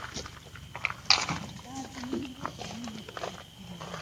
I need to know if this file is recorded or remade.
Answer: recorded